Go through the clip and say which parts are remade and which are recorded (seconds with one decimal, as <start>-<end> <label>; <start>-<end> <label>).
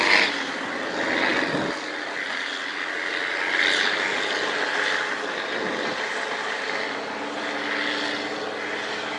0.0-9.2 recorded